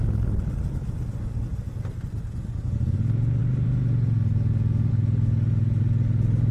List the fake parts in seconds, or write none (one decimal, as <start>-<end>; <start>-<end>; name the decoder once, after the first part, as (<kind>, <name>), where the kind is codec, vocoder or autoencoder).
3.4-4.9 (vocoder, Vocos)